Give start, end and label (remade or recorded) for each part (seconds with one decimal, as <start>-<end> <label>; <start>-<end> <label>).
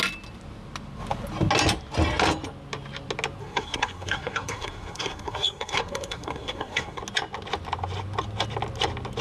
0.0-3.4 recorded; 3.4-7.0 remade; 7.0-9.2 recorded